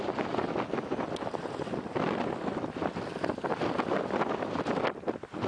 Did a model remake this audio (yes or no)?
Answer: no